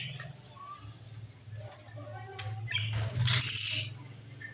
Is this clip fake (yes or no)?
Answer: no